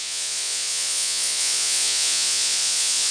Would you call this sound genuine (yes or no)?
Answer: no